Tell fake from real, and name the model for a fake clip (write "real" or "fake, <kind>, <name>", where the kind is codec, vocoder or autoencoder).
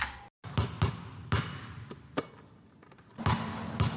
real